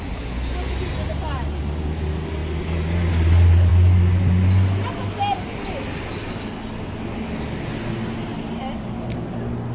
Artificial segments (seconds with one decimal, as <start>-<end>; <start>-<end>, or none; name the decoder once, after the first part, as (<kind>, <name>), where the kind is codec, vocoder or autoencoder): none